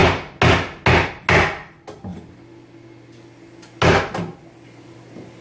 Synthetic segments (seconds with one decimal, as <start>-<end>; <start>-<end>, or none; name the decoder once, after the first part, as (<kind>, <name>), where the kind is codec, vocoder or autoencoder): none